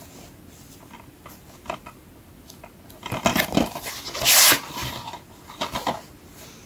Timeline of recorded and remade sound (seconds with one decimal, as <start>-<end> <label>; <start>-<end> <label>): 0.0-6.7 recorded

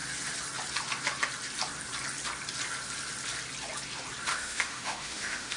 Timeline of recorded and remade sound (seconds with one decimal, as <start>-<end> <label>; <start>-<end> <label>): 0.0-4.3 recorded; 4.3-5.6 remade

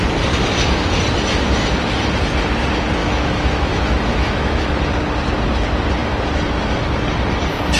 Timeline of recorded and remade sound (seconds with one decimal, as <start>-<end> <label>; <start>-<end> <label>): 0.0-3.0 recorded; 3.0-4.7 remade; 4.7-7.8 recorded